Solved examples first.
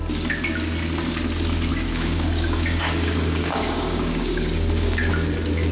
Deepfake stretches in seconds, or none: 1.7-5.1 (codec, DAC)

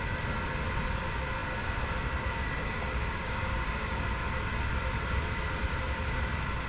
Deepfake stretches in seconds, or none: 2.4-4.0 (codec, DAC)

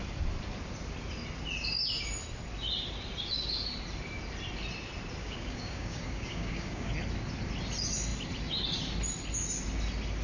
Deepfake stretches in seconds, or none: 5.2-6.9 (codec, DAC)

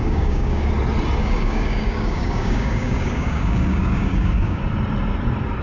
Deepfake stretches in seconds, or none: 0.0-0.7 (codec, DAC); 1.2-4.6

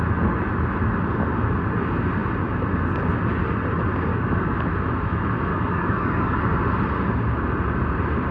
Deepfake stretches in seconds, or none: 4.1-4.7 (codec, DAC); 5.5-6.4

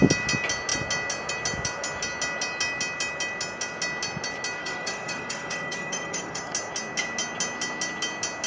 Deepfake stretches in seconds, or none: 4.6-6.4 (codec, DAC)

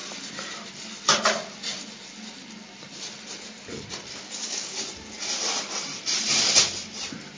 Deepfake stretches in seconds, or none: 4.1-4.8 (codec, DAC)